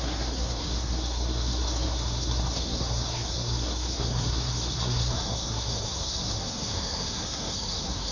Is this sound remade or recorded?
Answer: remade